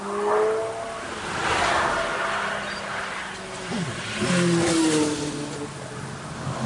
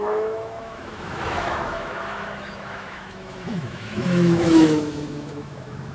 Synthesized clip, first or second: second